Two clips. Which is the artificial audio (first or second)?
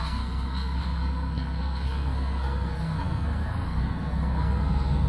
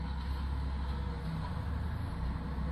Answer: first